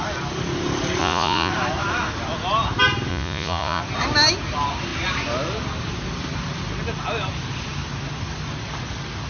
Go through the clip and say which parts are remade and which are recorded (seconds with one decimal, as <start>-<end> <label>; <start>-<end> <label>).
0.0-1.0 recorded; 1.0-1.5 remade; 1.5-3.1 recorded; 3.1-3.8 remade; 3.8-9.3 recorded